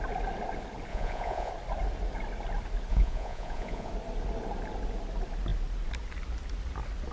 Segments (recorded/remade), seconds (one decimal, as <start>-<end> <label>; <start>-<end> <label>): 0.0-0.9 recorded; 0.9-1.5 remade; 1.5-2.9 recorded; 2.9-3.9 remade; 3.9-7.1 recorded